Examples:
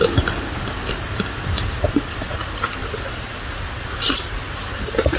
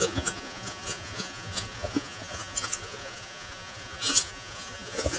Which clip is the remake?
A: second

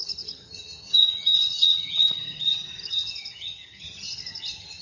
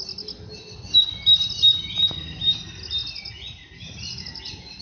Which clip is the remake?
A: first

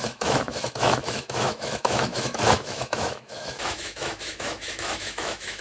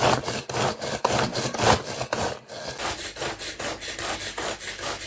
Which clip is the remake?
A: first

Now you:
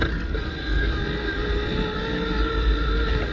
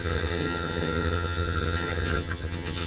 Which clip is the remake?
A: second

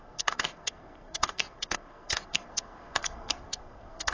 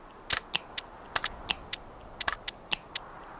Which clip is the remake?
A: first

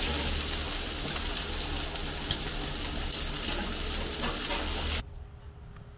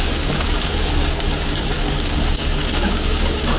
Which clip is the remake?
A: second